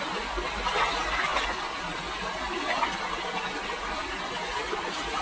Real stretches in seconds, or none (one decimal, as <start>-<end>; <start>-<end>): 0.0-5.2